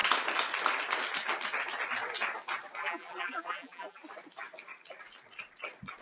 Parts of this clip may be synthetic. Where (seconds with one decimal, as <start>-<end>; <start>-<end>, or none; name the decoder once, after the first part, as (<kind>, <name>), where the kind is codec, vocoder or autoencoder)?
2.8-4.0 (vocoder, BigVGAN v2)